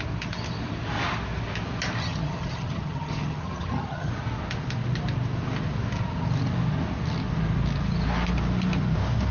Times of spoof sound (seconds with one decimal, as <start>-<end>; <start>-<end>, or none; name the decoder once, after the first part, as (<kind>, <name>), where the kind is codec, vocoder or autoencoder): 2.0-4.1 (vocoder, HiFi-GAN)